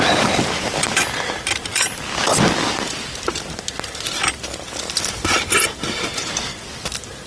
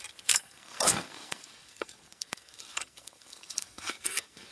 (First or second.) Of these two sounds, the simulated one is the second